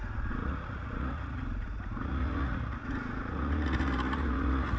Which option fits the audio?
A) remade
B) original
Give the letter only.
A